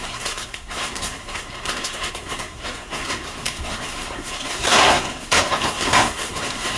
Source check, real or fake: fake